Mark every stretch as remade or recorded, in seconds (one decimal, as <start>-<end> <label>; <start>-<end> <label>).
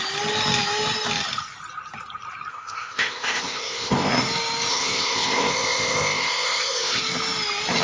0.0-2.5 recorded; 2.5-4.1 remade; 4.1-4.7 recorded; 4.7-7.0 remade; 7.0-7.8 recorded